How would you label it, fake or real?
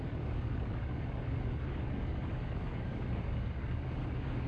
fake